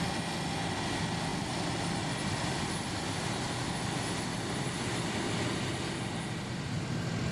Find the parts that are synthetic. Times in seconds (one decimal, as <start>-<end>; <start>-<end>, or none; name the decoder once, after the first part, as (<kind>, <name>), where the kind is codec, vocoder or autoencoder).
none